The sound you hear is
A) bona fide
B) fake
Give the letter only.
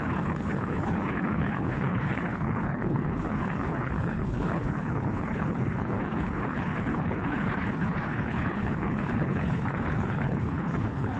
B